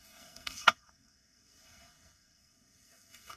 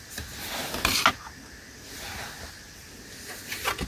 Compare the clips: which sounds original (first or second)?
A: second